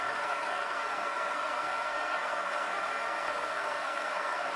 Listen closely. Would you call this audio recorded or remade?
remade